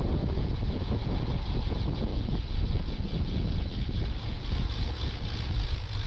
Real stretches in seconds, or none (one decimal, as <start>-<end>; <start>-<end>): none